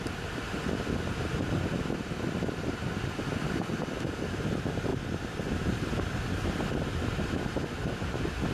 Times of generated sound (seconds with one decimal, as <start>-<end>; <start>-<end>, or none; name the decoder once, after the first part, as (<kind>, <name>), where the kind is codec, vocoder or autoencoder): 4.9-6.7 (vocoder, BigVGAN v2)